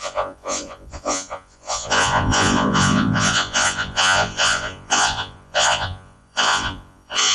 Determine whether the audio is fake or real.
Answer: fake